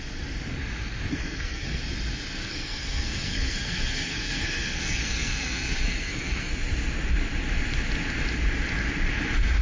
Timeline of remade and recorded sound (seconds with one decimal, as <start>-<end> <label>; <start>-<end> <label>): 0.0-1.1 recorded; 1.1-1.8 remade; 1.8-2.4 recorded; 2.4-6.5 remade; 6.5-9.6 recorded